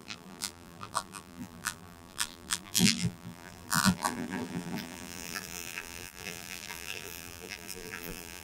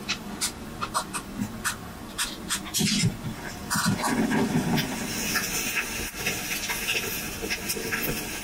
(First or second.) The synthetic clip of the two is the first